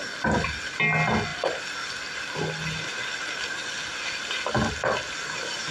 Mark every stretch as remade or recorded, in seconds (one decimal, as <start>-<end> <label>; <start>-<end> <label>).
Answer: 0.0-5.7 recorded